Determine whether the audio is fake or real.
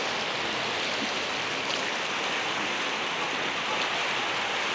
real